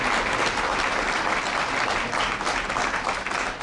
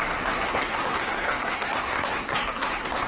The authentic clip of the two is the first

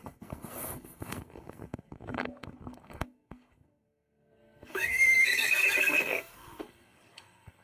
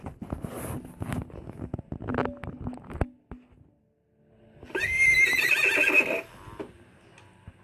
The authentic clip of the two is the second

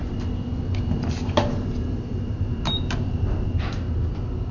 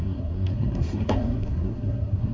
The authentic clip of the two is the first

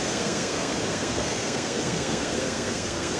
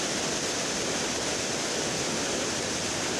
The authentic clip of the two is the second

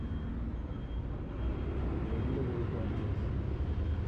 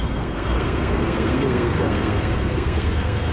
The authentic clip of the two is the first